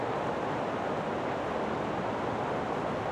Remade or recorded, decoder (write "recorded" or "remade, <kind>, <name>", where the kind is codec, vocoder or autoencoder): recorded